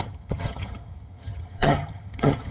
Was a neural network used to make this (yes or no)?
yes